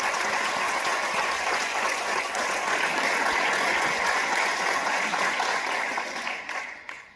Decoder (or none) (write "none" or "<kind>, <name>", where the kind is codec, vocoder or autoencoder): vocoder, Vocos